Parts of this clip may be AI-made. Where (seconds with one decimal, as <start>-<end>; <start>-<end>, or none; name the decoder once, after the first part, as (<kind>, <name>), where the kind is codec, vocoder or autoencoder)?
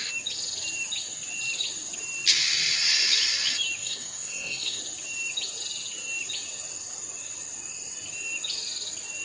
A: 3.8-4.8 (codec, SNAC)